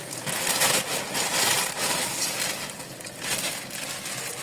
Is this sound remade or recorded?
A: recorded